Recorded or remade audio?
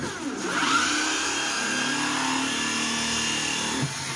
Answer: recorded